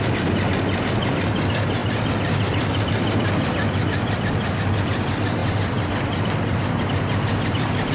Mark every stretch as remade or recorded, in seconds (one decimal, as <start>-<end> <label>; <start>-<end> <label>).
0.0-1.8 recorded; 1.8-3.0 remade; 3.0-5.4 recorded; 5.4-6.8 remade; 6.8-7.9 recorded